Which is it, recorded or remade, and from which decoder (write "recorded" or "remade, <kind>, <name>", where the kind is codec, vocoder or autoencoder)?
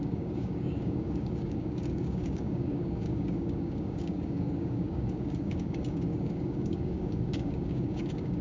remade, codec, DAC